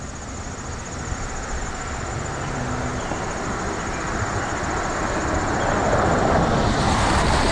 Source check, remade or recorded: recorded